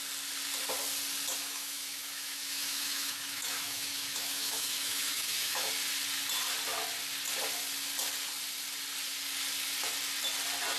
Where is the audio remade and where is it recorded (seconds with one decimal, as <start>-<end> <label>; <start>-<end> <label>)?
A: 0.0-1.4 recorded; 1.4-5.7 remade; 5.7-10.8 recorded